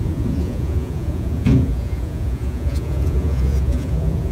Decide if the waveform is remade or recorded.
remade